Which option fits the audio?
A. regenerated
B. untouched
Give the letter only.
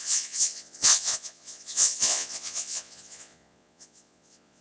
A